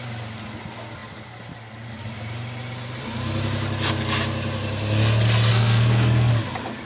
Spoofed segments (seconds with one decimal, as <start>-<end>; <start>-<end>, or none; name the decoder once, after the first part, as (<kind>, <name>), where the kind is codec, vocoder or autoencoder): 5.5-6.3 (codec, SNAC)